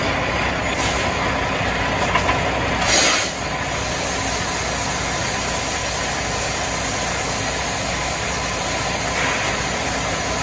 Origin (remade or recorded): recorded